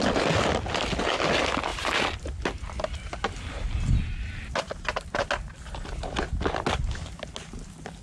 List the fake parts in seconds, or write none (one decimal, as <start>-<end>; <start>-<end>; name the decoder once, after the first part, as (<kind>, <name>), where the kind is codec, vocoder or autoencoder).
none